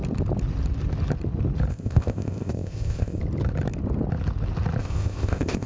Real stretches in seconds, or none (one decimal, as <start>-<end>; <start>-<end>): 0.0-1.7; 3.2-4.8